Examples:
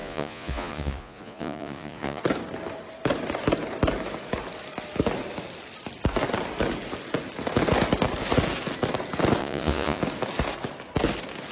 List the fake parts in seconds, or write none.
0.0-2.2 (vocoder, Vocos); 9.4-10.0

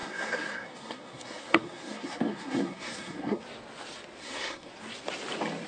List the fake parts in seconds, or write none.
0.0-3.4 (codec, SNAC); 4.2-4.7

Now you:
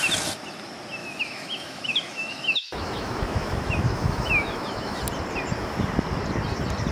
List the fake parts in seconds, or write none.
1.0-5.0 (autoencoder, DAC-VAE)